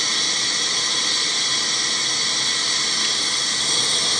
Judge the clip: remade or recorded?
recorded